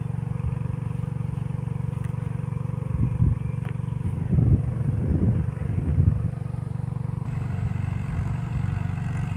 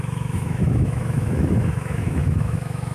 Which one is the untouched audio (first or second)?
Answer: first